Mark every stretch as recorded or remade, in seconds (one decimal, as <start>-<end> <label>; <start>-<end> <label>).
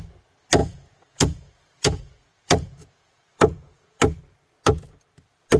0.0-0.6 recorded; 0.6-4.0 remade; 4.0-5.6 recorded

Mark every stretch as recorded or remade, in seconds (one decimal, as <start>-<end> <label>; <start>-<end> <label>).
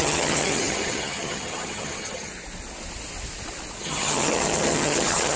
0.0-2.3 remade; 2.3-3.8 recorded; 3.8-5.4 remade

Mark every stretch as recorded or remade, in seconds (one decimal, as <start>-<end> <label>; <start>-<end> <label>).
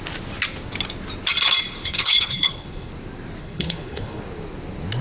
0.0-1.8 recorded; 1.8-2.9 remade; 2.9-3.4 recorded; 3.4-4.2 remade; 4.2-5.0 recorded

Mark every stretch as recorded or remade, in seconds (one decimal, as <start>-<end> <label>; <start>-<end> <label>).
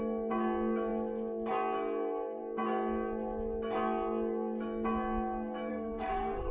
0.0-5.7 recorded; 5.7-6.5 remade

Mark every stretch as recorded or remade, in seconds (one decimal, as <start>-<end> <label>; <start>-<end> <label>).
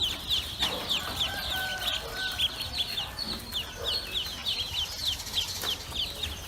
0.0-6.5 recorded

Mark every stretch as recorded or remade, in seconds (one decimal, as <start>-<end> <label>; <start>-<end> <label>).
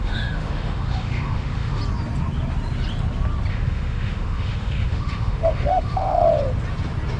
0.0-1.8 remade; 1.8-3.5 recorded; 3.5-6.3 remade; 6.3-7.2 recorded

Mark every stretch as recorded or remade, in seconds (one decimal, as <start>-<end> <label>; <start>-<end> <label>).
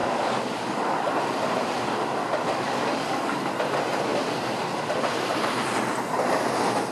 0.0-1.1 remade; 1.1-2.2 recorded; 2.2-3.5 remade; 3.5-6.9 recorded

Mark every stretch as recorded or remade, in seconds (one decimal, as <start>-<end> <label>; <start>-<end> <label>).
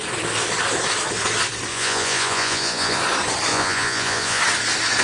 0.0-1.7 recorded; 1.7-3.0 remade; 3.0-3.5 recorded; 3.5-4.4 remade; 4.4-5.0 recorded